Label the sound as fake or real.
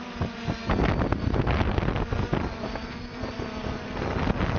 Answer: real